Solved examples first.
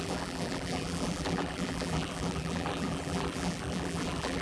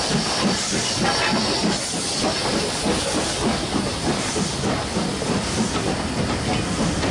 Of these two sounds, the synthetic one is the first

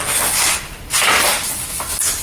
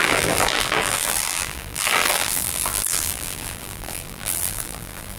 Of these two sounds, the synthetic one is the second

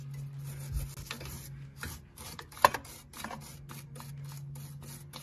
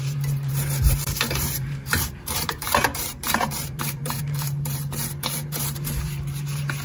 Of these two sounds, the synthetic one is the second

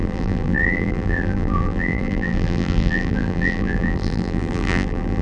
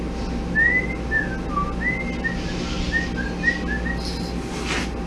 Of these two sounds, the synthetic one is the first